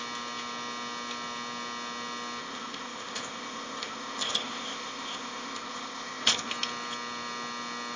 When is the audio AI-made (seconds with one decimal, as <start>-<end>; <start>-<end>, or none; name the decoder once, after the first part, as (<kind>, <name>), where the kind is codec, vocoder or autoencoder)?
2.4-6.5 (codec, ZipCodec)